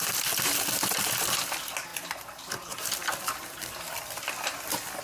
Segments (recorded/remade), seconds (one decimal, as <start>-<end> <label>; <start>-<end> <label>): 0.0-5.0 recorded